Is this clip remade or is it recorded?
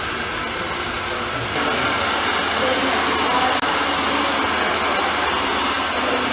recorded